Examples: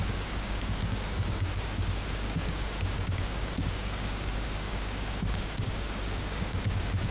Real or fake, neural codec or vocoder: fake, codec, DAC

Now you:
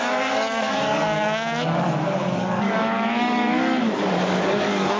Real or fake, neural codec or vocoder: fake, codec, DAC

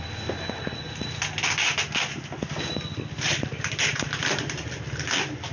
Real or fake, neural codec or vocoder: real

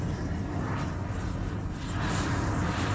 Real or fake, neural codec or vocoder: real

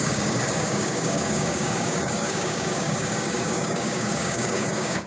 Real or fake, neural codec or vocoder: fake, codec, DAC